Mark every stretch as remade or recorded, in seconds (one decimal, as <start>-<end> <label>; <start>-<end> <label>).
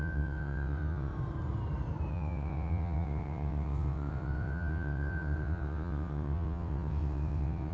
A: 0.0-1.1 remade; 1.1-2.1 recorded; 2.1-7.7 remade